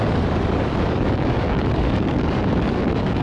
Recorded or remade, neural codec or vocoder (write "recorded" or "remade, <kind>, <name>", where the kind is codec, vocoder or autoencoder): remade, codec, DAC